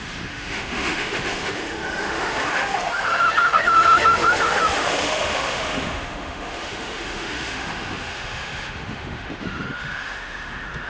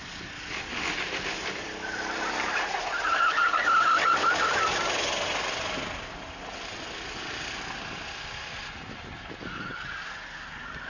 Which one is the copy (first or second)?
first